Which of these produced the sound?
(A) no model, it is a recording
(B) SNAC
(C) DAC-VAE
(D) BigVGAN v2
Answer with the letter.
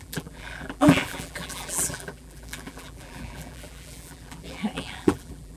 D